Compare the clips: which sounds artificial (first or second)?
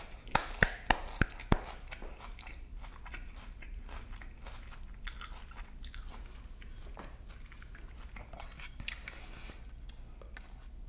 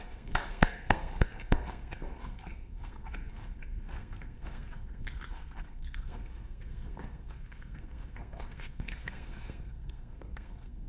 second